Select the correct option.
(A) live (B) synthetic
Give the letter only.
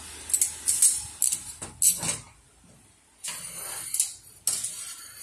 A